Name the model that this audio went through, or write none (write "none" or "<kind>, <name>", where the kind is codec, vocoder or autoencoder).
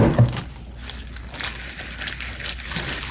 none